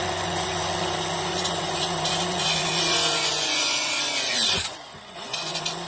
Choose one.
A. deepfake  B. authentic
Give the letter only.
A